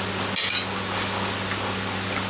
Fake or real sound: real